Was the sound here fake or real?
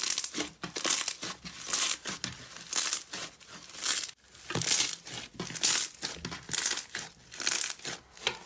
real